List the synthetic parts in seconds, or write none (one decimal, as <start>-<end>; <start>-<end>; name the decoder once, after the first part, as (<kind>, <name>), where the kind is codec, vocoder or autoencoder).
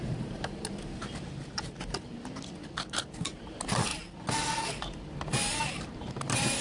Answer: 0.0-2.1 (vocoder, BigVGAN v2); 2.8-3.9; 5.6-6.6